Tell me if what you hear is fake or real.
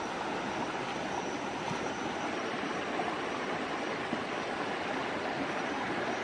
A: real